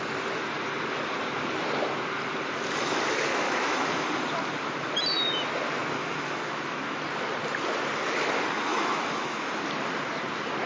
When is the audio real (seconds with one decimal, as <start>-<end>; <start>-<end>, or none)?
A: 0.0-3.3; 3.9-5.8; 7.0-8.7; 9.5-10.7